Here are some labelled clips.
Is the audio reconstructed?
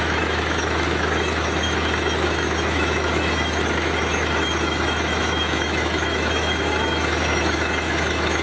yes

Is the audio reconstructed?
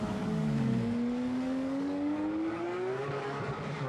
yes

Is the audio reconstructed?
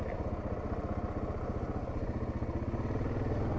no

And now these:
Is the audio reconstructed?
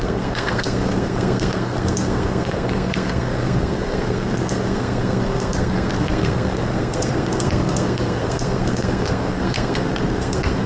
yes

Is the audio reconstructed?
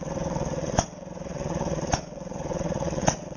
yes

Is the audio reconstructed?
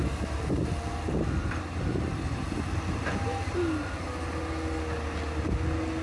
no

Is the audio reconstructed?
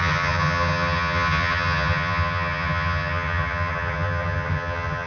yes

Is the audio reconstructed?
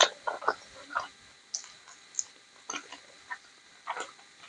no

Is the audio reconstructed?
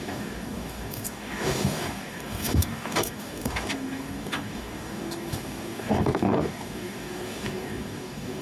yes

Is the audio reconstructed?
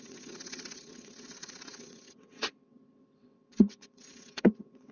yes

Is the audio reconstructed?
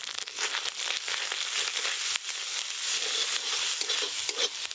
no